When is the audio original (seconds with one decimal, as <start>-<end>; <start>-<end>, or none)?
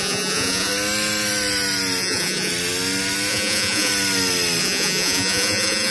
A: 0.7-2.0; 2.5-3.3; 3.9-4.6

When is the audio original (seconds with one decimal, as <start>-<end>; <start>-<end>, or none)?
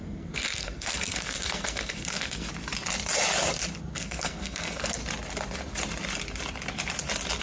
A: 2.5-3.9; 5.0-7.4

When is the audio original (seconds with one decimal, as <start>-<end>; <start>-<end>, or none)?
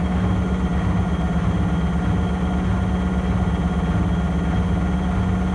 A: 0.0-5.5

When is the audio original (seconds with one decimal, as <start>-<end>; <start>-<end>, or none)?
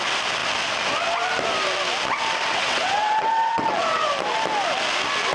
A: 0.0-2.5; 4.1-5.3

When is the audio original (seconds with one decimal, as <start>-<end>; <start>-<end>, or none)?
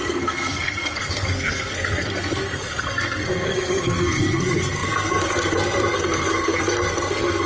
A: none